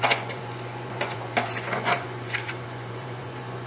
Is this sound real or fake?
fake